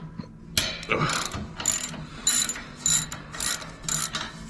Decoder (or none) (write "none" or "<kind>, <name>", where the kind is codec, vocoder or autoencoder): none